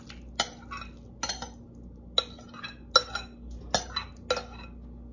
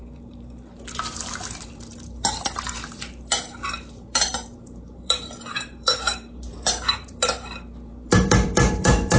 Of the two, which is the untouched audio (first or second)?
first